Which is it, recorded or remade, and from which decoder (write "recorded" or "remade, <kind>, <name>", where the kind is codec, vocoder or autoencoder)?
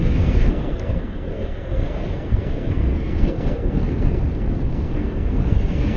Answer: remade, codec, SNAC